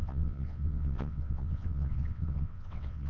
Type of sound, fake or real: fake